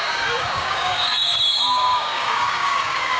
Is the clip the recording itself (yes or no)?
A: no